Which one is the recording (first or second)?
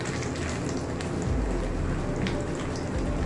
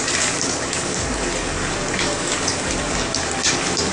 first